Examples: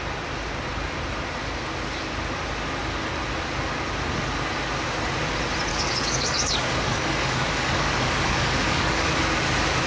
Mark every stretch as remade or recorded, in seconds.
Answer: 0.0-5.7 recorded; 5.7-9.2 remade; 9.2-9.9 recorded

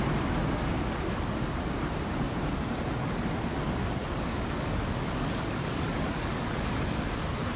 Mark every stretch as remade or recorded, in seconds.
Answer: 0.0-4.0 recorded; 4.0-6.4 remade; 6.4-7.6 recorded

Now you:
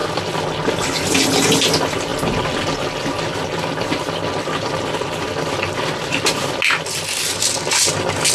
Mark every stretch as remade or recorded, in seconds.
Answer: 0.0-8.3 recorded

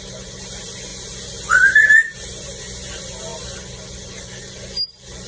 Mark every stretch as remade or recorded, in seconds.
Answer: 0.0-5.3 recorded